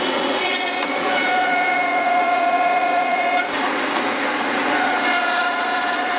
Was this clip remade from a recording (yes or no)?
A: yes